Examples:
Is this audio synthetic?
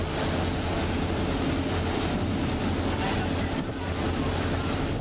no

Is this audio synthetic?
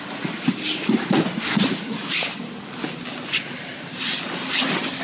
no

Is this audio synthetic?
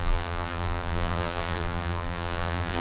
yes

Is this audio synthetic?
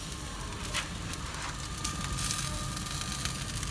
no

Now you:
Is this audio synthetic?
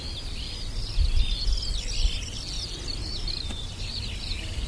no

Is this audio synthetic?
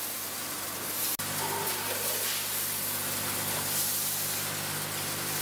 no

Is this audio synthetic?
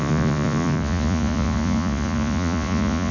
yes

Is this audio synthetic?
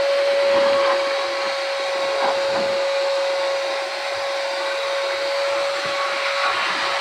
no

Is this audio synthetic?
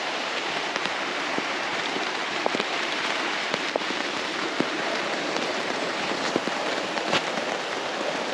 yes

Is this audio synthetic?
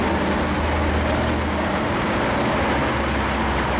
no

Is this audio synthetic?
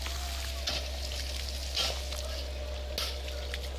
no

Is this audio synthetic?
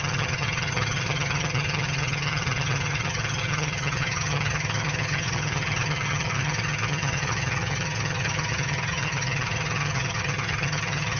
yes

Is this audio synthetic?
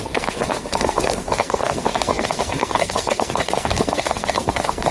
yes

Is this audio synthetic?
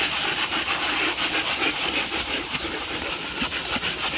no